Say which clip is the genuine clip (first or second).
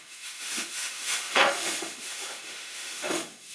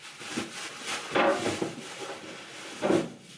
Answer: second